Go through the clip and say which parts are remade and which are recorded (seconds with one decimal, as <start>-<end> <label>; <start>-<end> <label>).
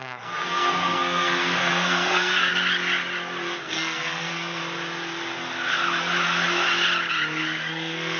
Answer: 0.0-2.5 remade; 2.5-3.6 recorded; 3.6-4.6 remade; 4.6-7.7 recorded; 7.7-8.2 remade